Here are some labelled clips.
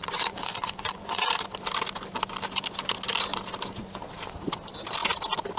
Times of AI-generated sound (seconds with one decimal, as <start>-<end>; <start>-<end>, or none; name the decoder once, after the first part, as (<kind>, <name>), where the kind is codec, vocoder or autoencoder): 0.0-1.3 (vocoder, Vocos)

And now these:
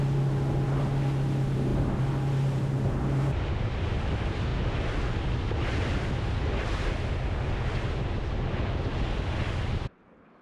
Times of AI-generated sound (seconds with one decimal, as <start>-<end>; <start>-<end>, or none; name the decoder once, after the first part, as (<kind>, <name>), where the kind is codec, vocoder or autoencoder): 4.5-5.3 (vocoder, BigVGAN v2)

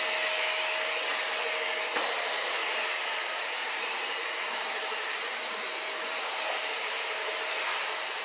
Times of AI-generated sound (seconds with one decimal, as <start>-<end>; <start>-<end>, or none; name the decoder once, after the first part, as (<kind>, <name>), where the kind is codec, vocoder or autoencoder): 2.6-7.3 (vocoder, BigVGAN v2)

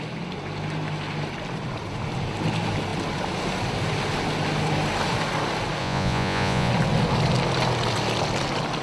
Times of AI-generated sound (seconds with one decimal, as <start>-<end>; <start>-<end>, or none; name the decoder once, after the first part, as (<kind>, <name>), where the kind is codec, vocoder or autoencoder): 5.8-6.7 (vocoder, Vocos)

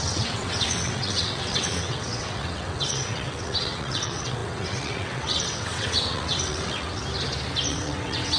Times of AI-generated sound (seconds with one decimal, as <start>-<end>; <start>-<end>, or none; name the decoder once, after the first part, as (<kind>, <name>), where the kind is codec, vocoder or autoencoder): 0.0-7.0 (vocoder, WaveNeXt); 7.7-8.4

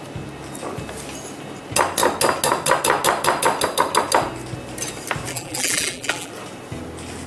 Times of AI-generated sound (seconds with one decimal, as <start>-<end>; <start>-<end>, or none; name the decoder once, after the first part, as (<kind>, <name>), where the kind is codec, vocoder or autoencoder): 5.3-6.3 (vocoder, BigVGAN v2)